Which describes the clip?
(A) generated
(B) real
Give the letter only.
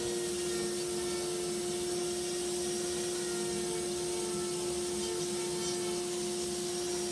B